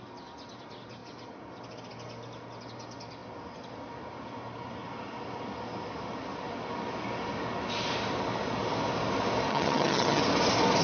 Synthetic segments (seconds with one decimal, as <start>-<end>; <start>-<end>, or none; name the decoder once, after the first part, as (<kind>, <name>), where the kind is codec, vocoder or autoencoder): 9.5-10.2 (vocoder, HiFi-GAN)